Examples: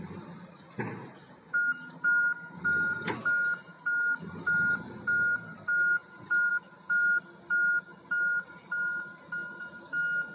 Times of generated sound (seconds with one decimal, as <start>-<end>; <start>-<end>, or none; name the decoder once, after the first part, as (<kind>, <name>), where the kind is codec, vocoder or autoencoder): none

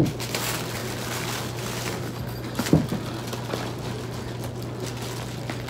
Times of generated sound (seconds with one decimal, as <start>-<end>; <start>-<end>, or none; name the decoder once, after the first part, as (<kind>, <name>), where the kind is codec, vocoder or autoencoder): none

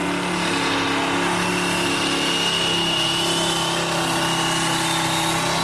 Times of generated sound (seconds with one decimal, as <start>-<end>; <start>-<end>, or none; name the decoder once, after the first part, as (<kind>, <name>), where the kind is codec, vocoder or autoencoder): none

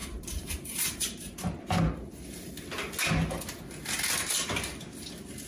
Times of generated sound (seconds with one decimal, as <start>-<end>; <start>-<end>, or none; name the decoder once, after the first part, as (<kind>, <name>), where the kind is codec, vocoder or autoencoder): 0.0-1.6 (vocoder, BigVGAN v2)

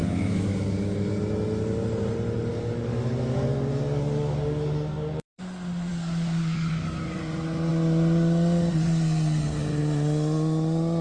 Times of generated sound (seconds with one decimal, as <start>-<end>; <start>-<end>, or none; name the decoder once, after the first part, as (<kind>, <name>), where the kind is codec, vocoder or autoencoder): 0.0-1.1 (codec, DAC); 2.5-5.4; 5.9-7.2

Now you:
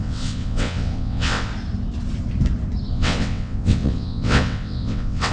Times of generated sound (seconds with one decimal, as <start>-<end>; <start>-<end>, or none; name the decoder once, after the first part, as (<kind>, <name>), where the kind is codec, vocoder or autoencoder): 0.0-1.5 (vocoder, WaveNeXt); 2.9-5.3